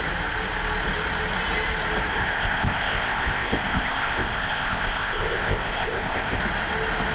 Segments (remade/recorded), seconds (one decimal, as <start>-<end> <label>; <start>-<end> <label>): 0.0-2.1 recorded; 2.1-6.4 remade; 6.4-7.1 recorded

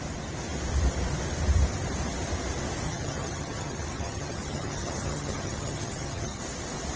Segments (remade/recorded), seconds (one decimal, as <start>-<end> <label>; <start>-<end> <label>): 0.0-2.9 recorded; 2.9-6.4 remade; 6.4-7.0 recorded

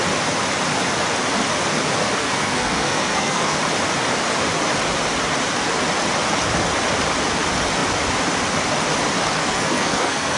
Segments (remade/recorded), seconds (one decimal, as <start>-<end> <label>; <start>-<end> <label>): 0.0-2.2 recorded; 2.2-3.6 remade; 3.6-9.4 recorded; 9.4-10.4 remade

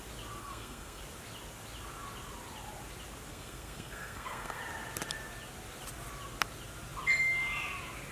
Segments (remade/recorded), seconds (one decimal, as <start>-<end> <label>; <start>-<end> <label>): 0.0-0.4 recorded; 0.4-1.0 remade; 1.0-3.3 recorded; 3.3-4.6 remade; 4.6-8.1 recorded

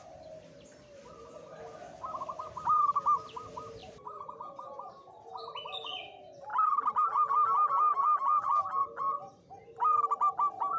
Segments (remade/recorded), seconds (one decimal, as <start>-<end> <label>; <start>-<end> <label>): 0.0-3.8 recorded; 3.8-4.9 remade; 4.9-10.8 recorded